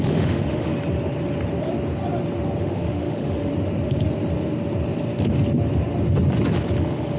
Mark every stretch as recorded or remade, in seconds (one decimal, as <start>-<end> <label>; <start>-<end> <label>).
0.0-0.7 remade; 0.7-2.6 recorded; 2.6-3.5 remade; 3.5-6.8 recorded; 6.8-7.2 remade